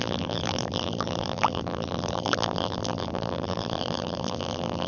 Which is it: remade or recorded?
remade